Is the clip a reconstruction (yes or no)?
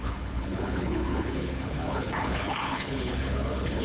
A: yes